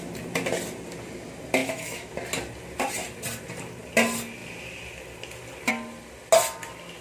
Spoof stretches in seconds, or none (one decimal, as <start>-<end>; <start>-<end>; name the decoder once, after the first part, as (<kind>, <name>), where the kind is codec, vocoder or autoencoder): 1.6-2.1 (autoencoder, DAC-VAE)